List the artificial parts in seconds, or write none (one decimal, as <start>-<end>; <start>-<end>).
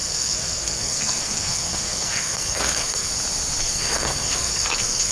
0.0-3.1; 3.6-5.1